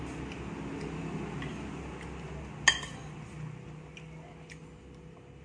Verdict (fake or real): real